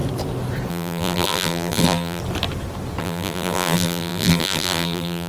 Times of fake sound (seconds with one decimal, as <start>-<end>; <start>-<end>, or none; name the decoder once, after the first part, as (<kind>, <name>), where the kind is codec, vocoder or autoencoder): 0.7-2.2 (vocoder, BigVGAN v2); 3.0-5.3